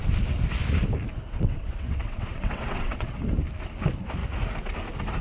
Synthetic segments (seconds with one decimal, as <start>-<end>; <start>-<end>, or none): 1.3-3.2